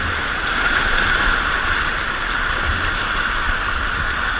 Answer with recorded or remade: recorded